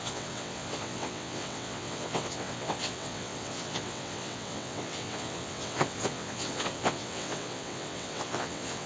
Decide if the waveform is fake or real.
fake